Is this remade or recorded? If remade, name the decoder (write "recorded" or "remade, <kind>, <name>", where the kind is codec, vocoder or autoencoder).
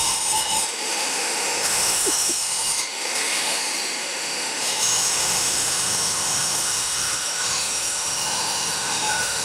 remade, autoencoder, DAC-VAE